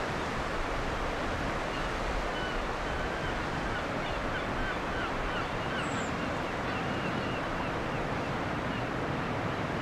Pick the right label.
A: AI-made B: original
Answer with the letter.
B